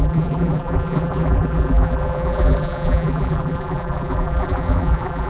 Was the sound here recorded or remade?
remade